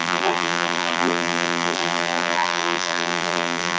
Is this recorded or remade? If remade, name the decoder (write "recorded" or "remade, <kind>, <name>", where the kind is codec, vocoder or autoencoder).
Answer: remade, vocoder, BigVGAN v2